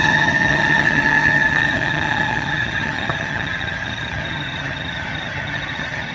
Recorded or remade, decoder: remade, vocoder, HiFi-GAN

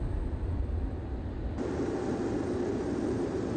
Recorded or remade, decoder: recorded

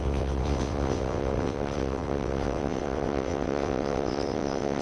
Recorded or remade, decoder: remade, vocoder, WaveNeXt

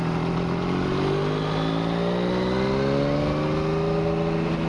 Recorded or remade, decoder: recorded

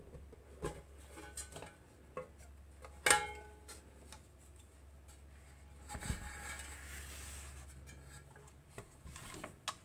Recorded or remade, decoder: recorded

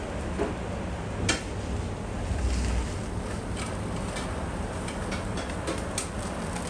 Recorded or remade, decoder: recorded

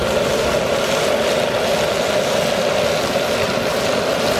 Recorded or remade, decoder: recorded